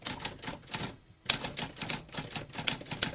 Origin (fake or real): real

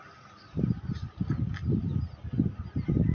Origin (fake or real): real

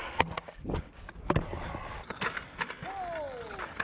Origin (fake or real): real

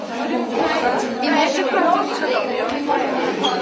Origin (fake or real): fake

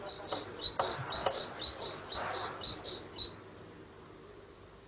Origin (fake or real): real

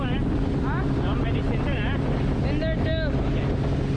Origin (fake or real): real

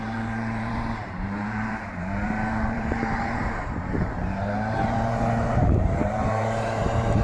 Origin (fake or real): fake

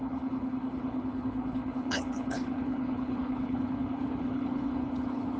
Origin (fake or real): fake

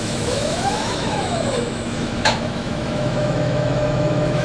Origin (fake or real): fake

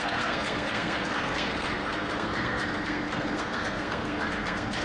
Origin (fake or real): fake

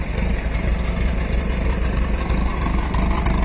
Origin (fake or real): real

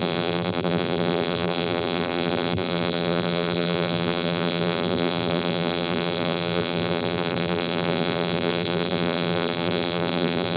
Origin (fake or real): fake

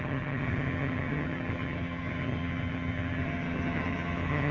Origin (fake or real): fake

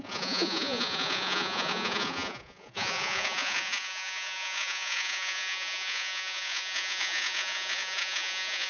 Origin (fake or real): fake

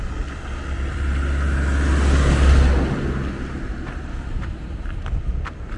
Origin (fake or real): real